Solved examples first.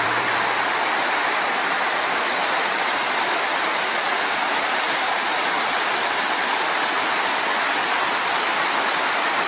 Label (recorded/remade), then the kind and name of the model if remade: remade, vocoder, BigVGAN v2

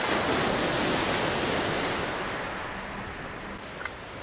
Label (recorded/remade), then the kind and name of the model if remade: recorded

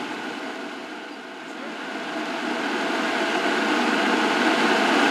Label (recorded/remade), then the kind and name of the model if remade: recorded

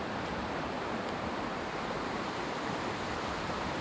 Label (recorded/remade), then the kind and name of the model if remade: remade, vocoder, BigVGAN v2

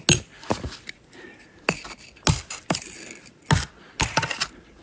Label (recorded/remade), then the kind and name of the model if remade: recorded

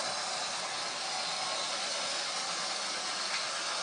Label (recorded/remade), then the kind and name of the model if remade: recorded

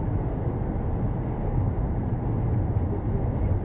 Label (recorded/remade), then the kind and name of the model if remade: recorded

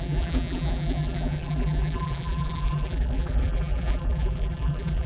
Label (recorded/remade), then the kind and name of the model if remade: remade, vocoder, BigVGAN v2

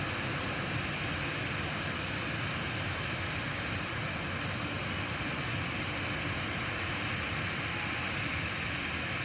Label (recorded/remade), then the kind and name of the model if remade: recorded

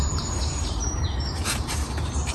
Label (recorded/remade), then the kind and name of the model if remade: remade, vocoder, BigVGAN v2